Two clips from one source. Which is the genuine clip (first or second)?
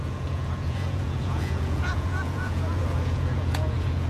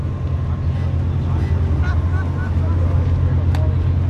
second